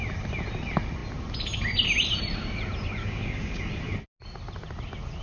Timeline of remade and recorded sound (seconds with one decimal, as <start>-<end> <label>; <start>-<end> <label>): 0.0-3.0 recorded; 3.0-3.6 remade; 3.6-5.2 recorded